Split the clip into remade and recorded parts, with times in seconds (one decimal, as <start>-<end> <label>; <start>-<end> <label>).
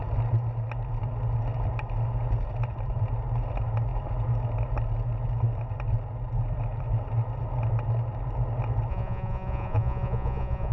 0.0-8.9 recorded; 8.9-10.7 remade